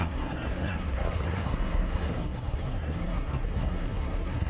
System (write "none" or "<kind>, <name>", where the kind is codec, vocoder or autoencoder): codec, SNAC